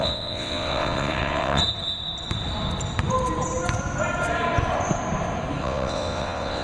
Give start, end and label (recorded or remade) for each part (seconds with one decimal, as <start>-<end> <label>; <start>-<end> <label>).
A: 0.0-1.6 remade; 1.6-5.6 recorded; 5.6-6.6 remade